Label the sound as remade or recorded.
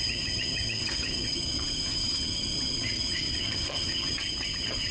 remade